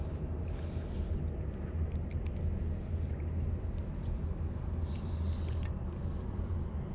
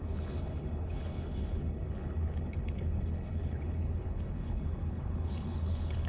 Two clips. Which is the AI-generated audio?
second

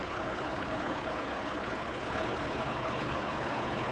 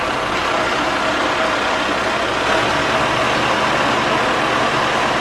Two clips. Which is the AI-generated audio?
first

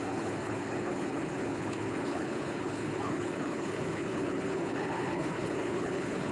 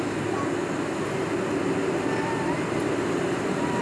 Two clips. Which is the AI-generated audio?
first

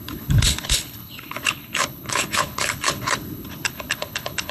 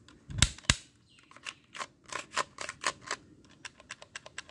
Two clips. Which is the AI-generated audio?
first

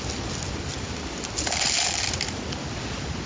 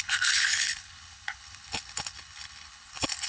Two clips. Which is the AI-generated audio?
second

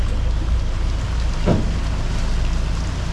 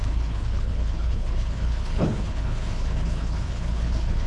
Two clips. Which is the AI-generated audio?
second